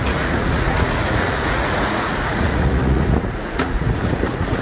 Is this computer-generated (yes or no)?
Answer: yes